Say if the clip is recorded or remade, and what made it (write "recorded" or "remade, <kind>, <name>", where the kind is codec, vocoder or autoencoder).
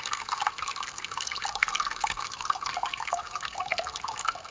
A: remade, codec, SNAC